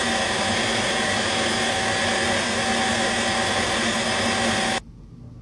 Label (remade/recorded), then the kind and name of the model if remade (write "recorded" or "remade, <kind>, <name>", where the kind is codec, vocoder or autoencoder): recorded